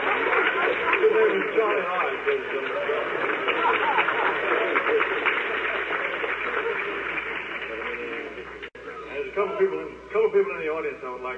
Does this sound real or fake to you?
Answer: real